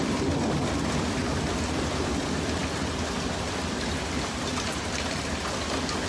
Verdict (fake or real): real